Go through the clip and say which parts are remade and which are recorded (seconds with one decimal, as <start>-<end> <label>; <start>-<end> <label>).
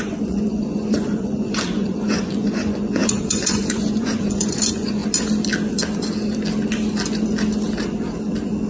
0.0-5.0 remade; 5.0-8.7 recorded